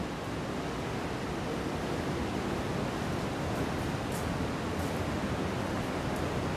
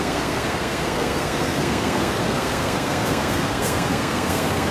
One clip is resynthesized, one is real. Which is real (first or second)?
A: first